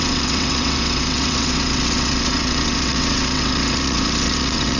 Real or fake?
fake